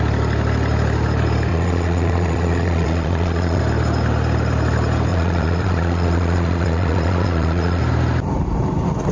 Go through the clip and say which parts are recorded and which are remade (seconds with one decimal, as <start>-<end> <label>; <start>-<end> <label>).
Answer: 0.0-1.5 recorded; 1.5-3.6 remade; 3.6-5.1 recorded; 5.1-7.8 remade; 7.8-9.1 recorded